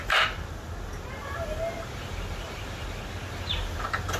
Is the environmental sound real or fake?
real